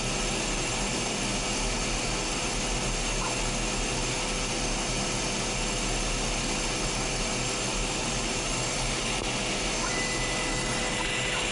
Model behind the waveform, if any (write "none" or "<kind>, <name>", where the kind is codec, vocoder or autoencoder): none